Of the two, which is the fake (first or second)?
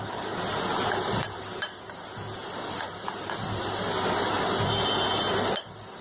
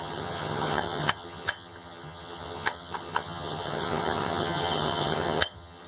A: second